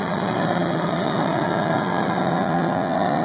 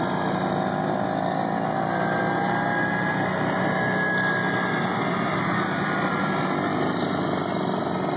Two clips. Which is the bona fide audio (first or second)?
second